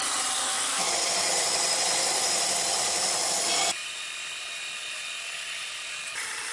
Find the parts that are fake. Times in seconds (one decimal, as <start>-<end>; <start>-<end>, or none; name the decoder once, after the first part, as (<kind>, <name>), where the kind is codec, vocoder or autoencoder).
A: 0.4-0.9 (codec, SNAC)